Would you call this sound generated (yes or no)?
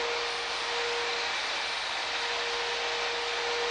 no